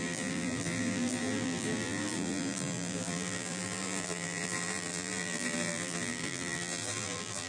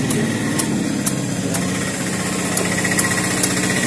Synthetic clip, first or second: first